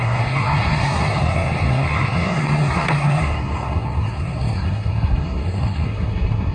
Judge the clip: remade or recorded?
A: remade